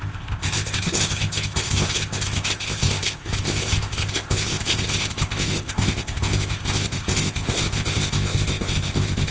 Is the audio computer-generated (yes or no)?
yes